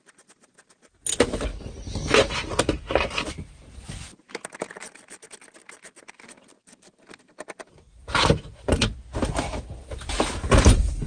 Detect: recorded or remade recorded